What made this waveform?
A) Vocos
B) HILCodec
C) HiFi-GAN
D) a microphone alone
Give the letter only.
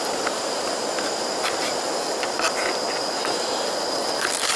D